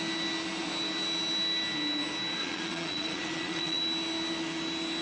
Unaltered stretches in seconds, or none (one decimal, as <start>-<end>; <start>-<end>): 0.0-2.4; 3.8-5.0